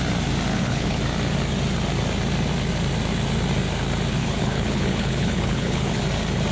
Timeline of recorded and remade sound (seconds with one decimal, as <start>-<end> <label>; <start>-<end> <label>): 0.0-0.5 recorded; 0.5-1.0 remade; 1.0-4.2 recorded; 4.2-6.0 remade; 6.0-6.5 recorded